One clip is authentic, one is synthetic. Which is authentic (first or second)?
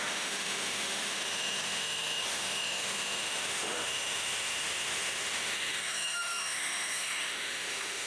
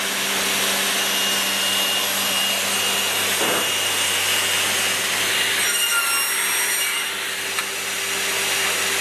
second